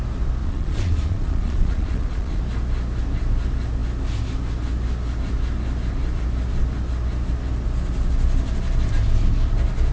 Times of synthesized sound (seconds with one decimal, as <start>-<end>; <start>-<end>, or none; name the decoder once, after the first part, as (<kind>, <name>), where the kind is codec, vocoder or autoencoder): 0.4-2.4 (vocoder, Vocos)